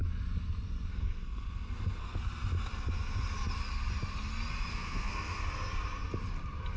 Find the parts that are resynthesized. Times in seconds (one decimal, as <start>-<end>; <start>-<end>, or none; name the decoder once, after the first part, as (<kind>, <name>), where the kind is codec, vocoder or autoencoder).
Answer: 0.9-2.2 (codec, SNAC); 4.7-5.4